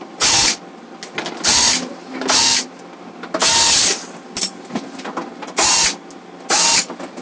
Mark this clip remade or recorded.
recorded